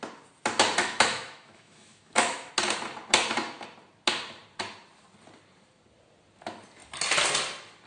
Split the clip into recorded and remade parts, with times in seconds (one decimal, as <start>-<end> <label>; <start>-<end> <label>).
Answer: 0.0-0.8 recorded; 0.8-2.5 remade; 2.5-7.9 recorded